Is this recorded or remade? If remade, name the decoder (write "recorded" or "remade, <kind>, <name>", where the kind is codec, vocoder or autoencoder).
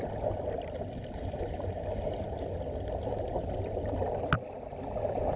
recorded